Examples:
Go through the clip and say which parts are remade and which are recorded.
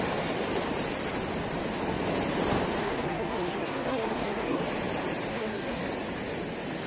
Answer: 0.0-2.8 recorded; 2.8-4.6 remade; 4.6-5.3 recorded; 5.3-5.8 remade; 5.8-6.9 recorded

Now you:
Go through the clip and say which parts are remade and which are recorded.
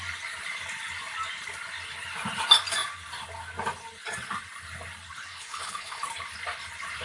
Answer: 0.0-5.3 recorded; 5.3-6.0 remade; 6.0-7.0 recorded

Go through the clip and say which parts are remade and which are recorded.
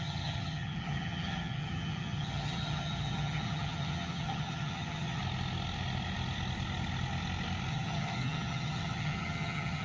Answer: 0.0-5.2 remade; 5.2-7.7 recorded; 7.7-9.8 remade